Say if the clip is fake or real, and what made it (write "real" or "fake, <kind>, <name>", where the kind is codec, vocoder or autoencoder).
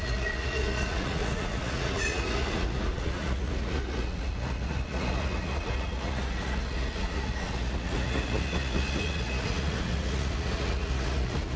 fake, vocoder, Vocos